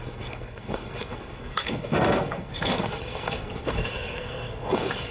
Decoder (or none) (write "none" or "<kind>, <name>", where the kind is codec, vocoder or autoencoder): codec, SNAC